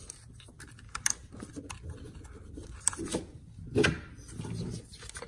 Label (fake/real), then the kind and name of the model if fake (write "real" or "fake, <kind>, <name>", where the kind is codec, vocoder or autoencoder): real